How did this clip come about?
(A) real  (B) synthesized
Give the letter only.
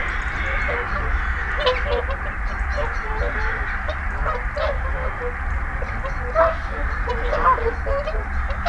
B